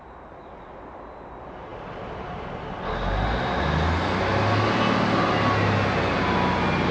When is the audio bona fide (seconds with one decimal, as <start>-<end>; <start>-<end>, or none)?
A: 0.0-6.9